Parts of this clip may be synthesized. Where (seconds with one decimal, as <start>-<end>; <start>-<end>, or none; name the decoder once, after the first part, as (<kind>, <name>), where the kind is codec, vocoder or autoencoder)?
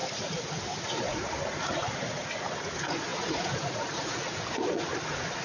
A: 0.0-5.4 (vocoder, Vocos)